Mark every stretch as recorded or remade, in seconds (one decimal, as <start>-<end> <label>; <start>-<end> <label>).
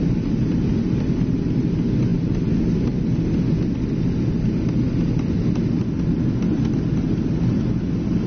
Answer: 0.0-8.3 recorded